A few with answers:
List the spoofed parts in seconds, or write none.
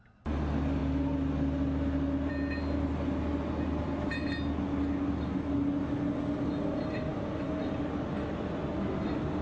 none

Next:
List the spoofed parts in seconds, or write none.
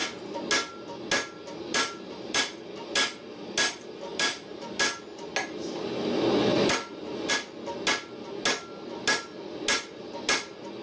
1.7-2.4 (vocoder, BigVGAN v2); 4.1-4.8; 6.5-7.3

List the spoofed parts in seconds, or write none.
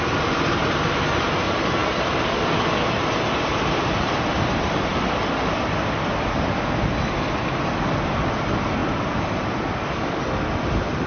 0.6-1.2 (vocoder, BigVGAN v2); 4.9-5.6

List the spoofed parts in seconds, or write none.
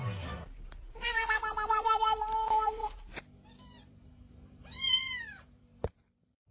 0.0-2.8 (vocoder, BigVGAN v2); 3.8-6.5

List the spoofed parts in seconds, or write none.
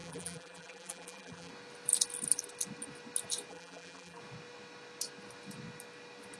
0.0-1.5 (vocoder, BigVGAN v2); 3.5-4.2